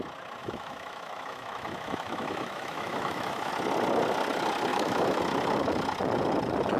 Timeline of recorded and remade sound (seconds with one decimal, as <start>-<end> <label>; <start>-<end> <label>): 0.0-0.4 recorded; 0.4-3.5 remade; 3.5-4.7 recorded; 4.7-5.2 remade; 5.2-6.8 recorded